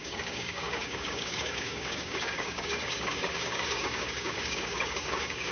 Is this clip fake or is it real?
fake